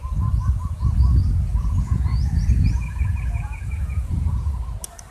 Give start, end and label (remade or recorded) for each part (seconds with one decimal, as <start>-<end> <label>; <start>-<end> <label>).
0.0-0.4 recorded; 0.4-1.0 remade; 1.0-1.5 recorded; 1.5-4.6 remade; 4.6-5.1 recorded